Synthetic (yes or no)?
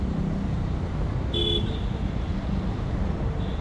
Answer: no